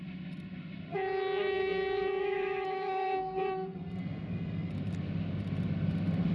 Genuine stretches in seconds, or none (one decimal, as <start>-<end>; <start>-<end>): 0.0-0.9; 4.7-6.3